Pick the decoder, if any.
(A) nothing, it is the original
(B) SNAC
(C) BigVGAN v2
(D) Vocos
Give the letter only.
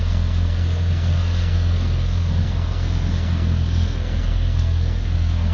B